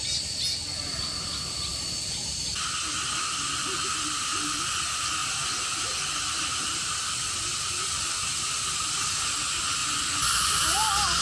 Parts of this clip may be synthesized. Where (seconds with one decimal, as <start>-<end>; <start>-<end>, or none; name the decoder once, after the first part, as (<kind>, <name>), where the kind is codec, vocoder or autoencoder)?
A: 9.8-10.6 (vocoder, Vocos)